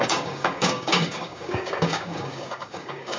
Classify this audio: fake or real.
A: fake